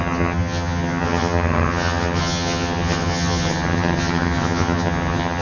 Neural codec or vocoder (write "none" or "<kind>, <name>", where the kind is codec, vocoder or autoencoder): vocoder, HiFi-GAN